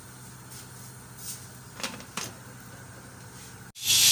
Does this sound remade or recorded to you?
recorded